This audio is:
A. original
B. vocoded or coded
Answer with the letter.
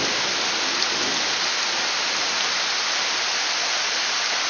A